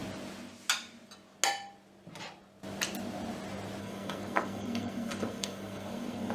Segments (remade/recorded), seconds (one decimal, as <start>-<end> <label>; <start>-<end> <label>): 0.0-3.8 recorded; 3.8-6.3 remade